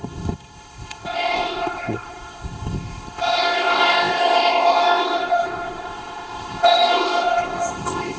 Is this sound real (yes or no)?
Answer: no